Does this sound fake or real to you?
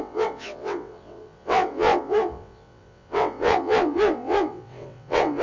fake